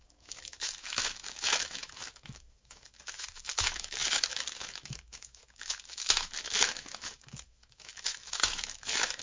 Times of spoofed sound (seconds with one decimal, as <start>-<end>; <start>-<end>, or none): 0.0-9.2